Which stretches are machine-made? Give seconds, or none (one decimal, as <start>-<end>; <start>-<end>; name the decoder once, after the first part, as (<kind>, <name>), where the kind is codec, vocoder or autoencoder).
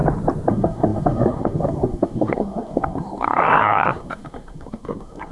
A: 0.5-5.3 (codec, SNAC)